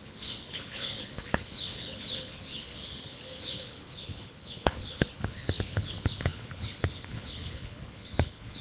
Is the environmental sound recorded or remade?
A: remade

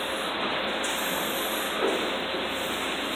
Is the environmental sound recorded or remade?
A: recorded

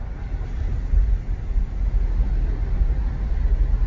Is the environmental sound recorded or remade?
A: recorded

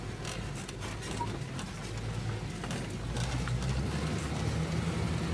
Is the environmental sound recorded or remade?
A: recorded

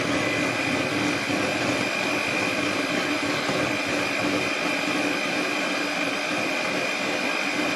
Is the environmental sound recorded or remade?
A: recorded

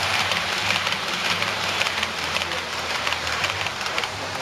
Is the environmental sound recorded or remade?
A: remade